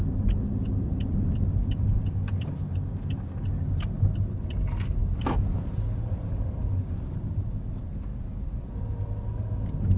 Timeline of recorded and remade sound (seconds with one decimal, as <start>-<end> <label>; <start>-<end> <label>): 0.0-1.6 recorded; 1.6-2.5 remade; 2.5-5.0 recorded; 5.0-7.7 remade; 7.7-8.1 recorded; 8.1-8.7 remade; 8.7-10.0 recorded